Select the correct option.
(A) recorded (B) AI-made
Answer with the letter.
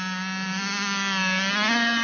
A